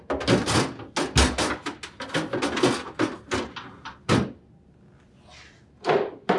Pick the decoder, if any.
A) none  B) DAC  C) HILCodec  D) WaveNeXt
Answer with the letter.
A